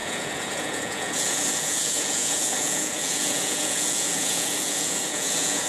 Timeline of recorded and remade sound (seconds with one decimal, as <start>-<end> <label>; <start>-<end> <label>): 0.0-5.7 remade